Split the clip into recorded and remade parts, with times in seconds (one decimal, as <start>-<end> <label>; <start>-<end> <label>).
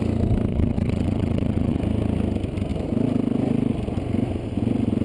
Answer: 0.0-0.5 recorded; 0.5-1.8 remade; 1.8-5.0 recorded